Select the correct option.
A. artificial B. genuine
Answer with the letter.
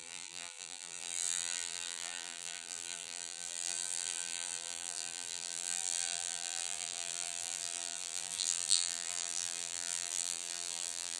A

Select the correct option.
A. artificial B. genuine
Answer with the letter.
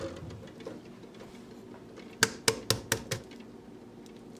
B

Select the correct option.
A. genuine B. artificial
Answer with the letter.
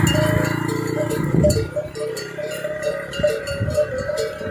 A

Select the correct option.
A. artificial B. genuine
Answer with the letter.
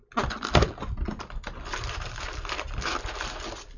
B